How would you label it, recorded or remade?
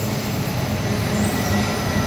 remade